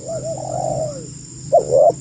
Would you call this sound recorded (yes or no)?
yes